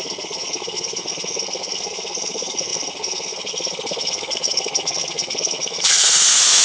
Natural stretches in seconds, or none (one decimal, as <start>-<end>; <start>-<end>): none